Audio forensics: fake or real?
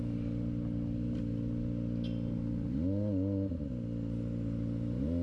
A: real